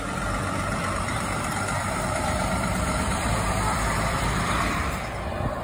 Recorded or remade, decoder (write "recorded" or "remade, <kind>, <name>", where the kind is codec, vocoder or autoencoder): remade, vocoder, BigVGAN v2